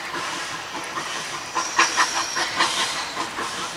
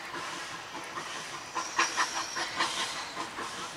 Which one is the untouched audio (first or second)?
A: second